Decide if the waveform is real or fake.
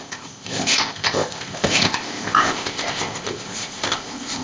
fake